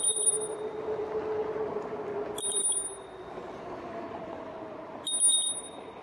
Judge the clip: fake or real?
real